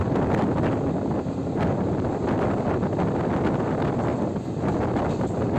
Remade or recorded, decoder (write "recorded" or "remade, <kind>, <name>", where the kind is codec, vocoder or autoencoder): recorded